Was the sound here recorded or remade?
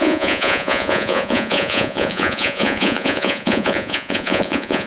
remade